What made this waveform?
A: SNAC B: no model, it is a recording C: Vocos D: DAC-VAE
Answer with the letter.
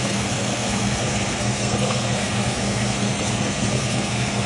A